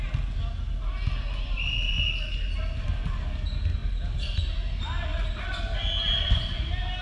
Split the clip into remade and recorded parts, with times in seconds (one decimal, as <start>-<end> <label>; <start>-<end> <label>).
0.0-3.8 recorded; 3.8-4.5 remade; 4.5-7.0 recorded